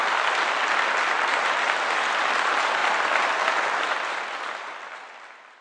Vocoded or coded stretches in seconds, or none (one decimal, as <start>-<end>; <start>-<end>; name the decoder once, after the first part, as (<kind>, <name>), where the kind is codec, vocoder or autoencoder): 0.0-5.6 (vocoder, BigVGAN v2)